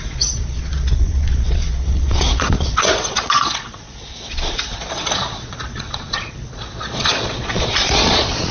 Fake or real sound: fake